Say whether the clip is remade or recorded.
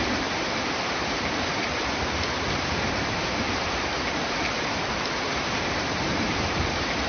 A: remade